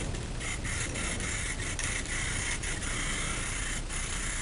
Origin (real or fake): fake